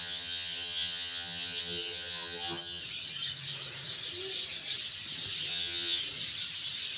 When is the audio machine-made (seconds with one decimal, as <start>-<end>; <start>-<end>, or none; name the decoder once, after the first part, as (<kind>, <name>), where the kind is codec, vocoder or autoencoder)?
0.0-2.8 (vocoder, HiFi-GAN); 5.5-6.0